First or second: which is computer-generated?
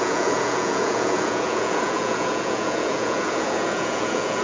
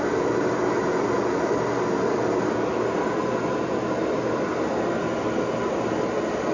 first